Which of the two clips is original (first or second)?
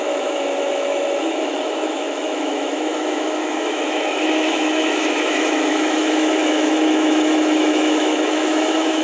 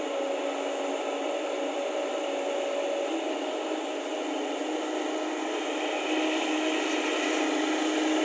second